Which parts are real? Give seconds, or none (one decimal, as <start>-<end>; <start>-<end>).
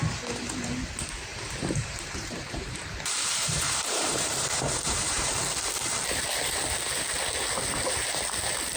0.0-1.3; 5.4-8.8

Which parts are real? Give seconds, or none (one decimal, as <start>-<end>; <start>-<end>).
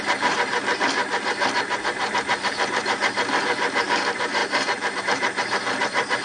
none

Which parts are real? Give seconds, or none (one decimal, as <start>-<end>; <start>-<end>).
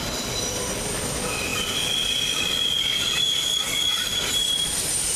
none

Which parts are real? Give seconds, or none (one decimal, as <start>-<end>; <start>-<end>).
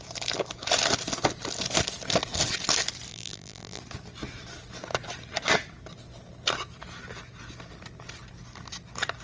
0.0-3.1; 3.8-9.2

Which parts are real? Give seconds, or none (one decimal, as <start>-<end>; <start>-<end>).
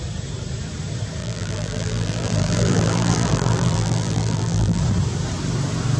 0.0-1.2; 4.8-6.0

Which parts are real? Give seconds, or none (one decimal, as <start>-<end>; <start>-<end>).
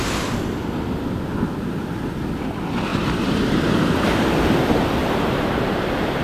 0.0-5.0; 5.8-6.2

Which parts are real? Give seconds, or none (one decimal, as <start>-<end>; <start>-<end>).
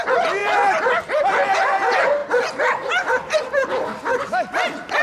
0.0-0.4; 1.0-5.0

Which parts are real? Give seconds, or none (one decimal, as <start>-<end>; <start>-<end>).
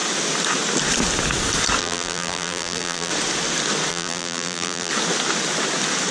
0.0-1.8; 3.1-3.9; 4.9-6.1